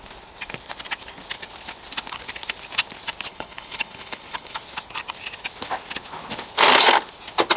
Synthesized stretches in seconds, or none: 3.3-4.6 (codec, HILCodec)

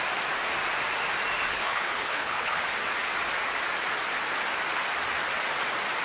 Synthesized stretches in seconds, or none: 1.5-2.6 (codec, HILCodec)

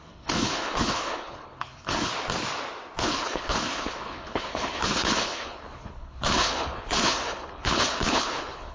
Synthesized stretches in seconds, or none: 0.0-2.1 (codec, HILCodec); 3.0-8.7